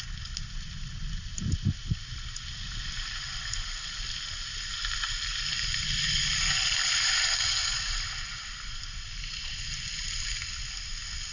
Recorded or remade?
recorded